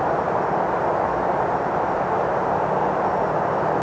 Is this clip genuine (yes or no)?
yes